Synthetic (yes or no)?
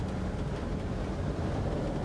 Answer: yes